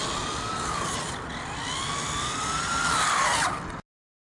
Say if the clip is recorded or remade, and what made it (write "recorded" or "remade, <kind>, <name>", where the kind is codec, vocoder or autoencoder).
recorded